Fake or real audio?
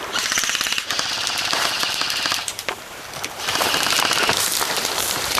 fake